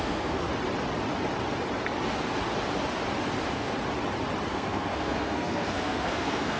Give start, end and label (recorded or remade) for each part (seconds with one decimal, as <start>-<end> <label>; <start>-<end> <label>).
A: 0.0-0.5 remade; 0.5-4.5 recorded; 4.5-6.6 remade